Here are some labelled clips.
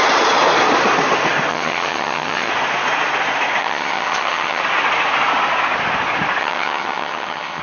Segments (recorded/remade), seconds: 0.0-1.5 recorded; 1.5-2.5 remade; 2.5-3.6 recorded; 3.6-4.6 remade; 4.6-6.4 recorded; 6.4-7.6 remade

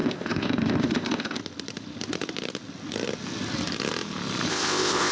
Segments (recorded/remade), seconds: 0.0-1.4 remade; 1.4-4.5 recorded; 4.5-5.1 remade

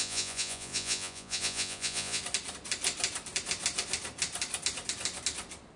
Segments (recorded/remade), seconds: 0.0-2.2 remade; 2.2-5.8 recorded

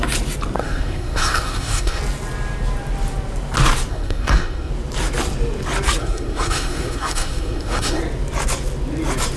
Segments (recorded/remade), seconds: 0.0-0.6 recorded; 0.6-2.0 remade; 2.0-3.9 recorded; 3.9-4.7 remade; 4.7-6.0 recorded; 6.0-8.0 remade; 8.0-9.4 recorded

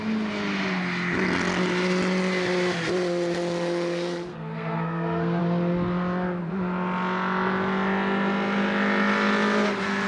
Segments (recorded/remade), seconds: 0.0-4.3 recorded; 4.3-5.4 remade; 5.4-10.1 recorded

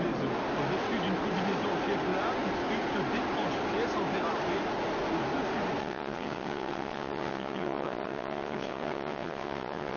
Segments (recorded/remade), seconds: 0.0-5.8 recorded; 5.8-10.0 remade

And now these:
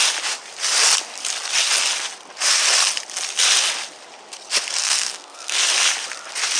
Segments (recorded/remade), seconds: 0.0-4.8 recorded; 4.8-5.6 remade; 5.6-6.6 recorded

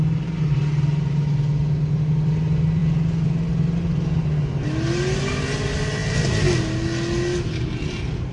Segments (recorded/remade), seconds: 0.0-8.3 recorded